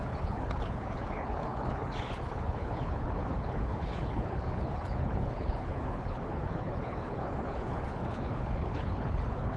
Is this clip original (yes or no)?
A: no